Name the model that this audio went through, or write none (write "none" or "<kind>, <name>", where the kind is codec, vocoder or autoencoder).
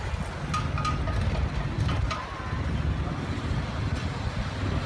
none